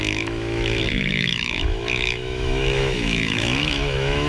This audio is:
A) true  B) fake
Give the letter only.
B